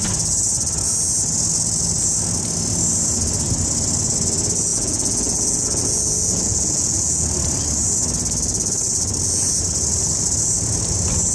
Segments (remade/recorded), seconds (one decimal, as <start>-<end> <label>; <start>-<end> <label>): 0.0-4.7 recorded; 4.7-7.3 remade; 7.3-11.3 recorded

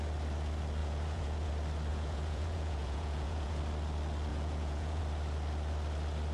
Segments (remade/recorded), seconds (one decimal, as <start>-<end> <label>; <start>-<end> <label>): 0.0-0.8 recorded; 0.8-1.5 remade; 1.5-1.9 recorded; 1.9-3.6 remade; 3.6-4.3 recorded; 4.3-5.0 remade; 5.0-6.3 recorded

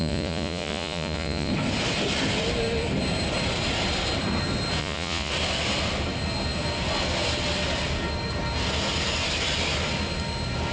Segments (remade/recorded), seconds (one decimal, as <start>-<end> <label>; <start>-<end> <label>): 0.0-1.5 remade; 1.5-4.8 recorded; 4.8-5.3 remade; 5.3-10.7 recorded

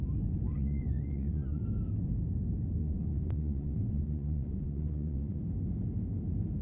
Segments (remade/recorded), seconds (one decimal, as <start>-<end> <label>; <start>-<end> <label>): 0.0-0.5 recorded; 0.5-1.6 remade; 1.6-2.8 recorded; 2.8-5.4 remade; 5.4-6.6 recorded

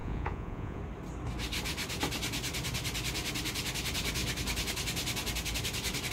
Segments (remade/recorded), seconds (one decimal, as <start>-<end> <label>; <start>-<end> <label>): 0.0-0.8 remade; 0.8-6.1 recorded

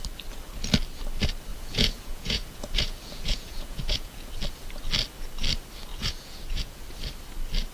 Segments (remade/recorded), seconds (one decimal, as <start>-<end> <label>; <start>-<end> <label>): 0.0-1.5 recorded; 1.5-4.3 remade; 4.3-5.9 recorded; 5.9-6.8 remade; 6.8-7.7 recorded

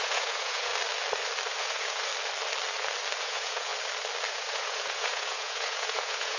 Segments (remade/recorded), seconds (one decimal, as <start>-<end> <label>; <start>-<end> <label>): 0.0-0.7 remade; 0.7-1.6 recorded; 1.6-2.1 remade; 2.1-3.2 recorded; 3.2-3.7 remade; 3.7-4.3 recorded; 4.3-6.4 remade

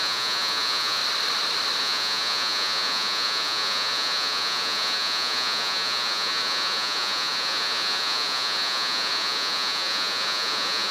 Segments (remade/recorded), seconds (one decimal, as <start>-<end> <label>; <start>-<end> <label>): 0.0-1.0 remade; 1.0-1.8 recorded; 1.8-10.9 remade